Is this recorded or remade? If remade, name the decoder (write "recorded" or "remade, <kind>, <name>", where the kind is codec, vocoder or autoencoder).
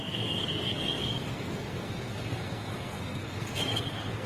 remade, codec, SNAC